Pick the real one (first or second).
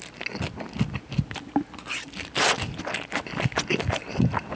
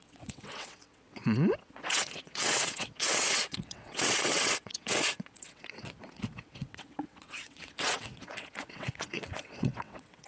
first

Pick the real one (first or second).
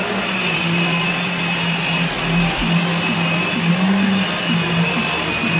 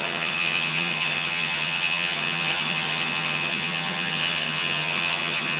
first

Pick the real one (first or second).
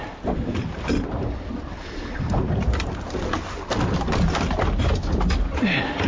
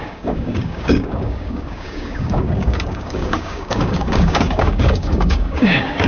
first